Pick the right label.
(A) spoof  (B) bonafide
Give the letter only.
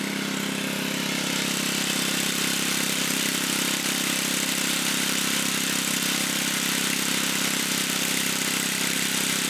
A